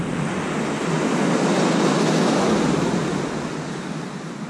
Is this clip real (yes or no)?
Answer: yes